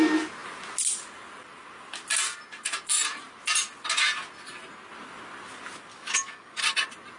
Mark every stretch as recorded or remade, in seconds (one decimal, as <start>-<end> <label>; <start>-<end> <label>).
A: 0.0-5.9 recorded; 5.9-6.6 remade; 6.6-7.2 recorded